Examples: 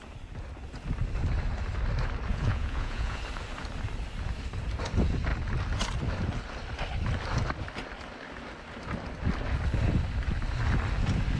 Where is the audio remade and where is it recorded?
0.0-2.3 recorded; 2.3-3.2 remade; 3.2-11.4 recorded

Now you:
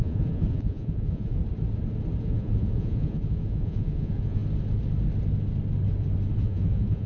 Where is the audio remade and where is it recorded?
0.0-1.4 remade; 1.4-2.2 recorded; 2.2-4.4 remade; 4.4-6.4 recorded; 6.4-7.1 remade

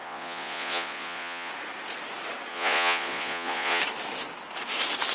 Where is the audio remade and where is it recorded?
0.0-1.5 remade; 1.5-2.5 recorded; 2.5-3.8 remade; 3.8-5.1 recorded

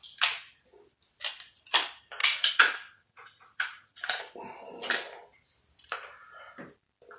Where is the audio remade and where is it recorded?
0.0-2.2 recorded; 2.2-4.2 remade; 4.2-7.2 recorded

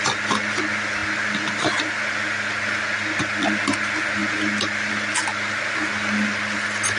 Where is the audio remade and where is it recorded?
0.0-7.0 recorded

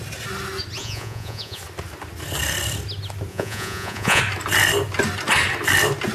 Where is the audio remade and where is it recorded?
0.0-0.8 recorded; 0.8-1.6 remade; 1.6-3.3 recorded; 3.3-4.2 remade; 4.2-6.1 recorded

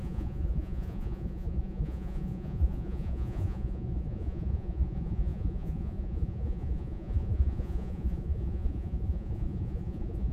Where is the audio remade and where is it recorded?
0.0-10.3 remade

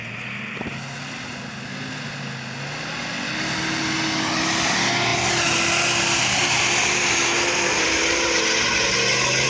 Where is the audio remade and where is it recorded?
0.0-9.5 recorded